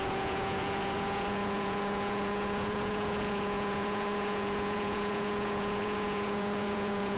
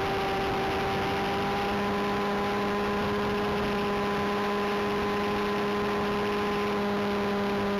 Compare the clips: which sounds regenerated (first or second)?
first